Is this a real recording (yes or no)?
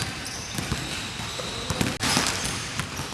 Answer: yes